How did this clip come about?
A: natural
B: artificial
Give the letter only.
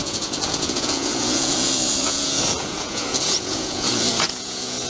B